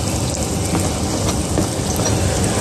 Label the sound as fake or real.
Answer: real